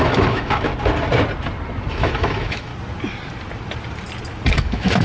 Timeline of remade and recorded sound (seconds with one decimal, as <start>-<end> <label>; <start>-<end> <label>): 0.0-0.7 remade; 0.7-1.9 recorded; 1.9-2.7 remade; 2.7-4.5 recorded; 4.5-5.0 remade